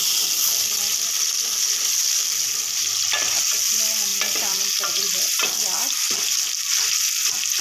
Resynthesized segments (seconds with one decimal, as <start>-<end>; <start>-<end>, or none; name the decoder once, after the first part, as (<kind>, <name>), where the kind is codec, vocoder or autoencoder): none